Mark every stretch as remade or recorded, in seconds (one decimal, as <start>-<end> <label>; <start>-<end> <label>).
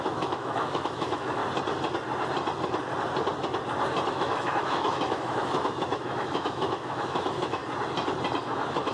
0.0-1.4 remade; 1.4-4.1 recorded; 4.1-7.6 remade; 7.6-8.4 recorded; 8.4-8.9 remade